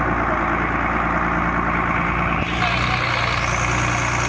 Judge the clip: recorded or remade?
recorded